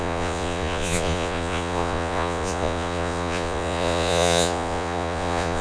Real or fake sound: fake